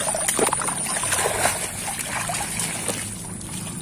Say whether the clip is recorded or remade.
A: remade